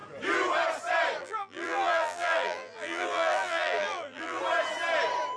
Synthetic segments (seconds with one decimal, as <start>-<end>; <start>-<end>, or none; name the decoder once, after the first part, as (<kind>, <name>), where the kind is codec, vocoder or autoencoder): 1.2-4.4 (vocoder, BigVGAN v2)